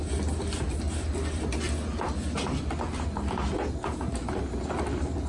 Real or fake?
real